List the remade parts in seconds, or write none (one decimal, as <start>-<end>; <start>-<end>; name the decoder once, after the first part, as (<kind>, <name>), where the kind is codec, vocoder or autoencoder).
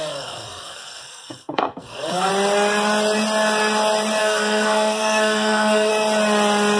0.0-2.3 (codec, SNAC); 4.2-5.9